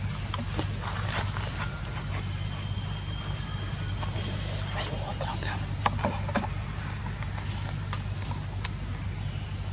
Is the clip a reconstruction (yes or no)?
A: no